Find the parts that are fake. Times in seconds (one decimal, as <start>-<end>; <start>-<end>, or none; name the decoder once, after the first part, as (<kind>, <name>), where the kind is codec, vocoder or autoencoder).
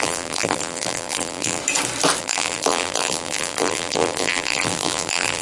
0.0-1.6 (vocoder, BigVGAN v2); 2.2-5.4